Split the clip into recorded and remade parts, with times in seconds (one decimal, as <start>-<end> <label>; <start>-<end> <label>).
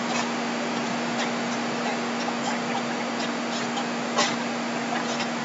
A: 0.0-5.4 recorded